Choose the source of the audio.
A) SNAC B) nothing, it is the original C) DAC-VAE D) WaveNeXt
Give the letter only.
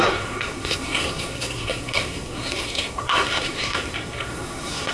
A